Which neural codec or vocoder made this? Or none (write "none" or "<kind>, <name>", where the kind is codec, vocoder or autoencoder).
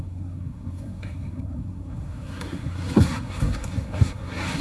codec, SNAC